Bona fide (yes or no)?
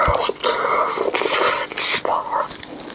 yes